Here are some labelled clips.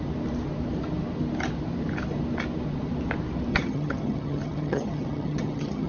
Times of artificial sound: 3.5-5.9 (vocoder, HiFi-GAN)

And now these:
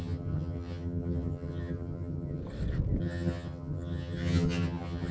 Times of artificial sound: 0.0-2.4 (vocoder, HiFi-GAN); 3.0-5.1

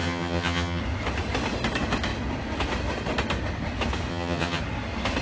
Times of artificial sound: 0.0-0.8 (vocoder, HiFi-GAN); 4.1-4.6

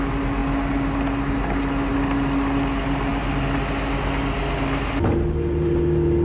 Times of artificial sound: none

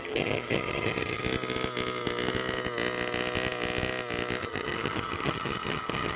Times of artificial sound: 0.0-1.2 (vocoder, HiFi-GAN); 4.4-6.2

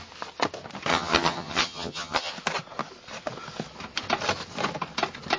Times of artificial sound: 0.9-2.3 (vocoder, HiFi-GAN)

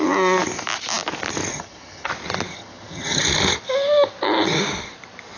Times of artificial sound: 1.5-2.1 (vocoder, HiFi-GAN); 2.5-3.2

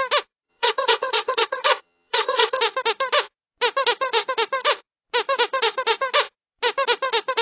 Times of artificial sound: 0.5-2.6 (vocoder, HiFi-GAN)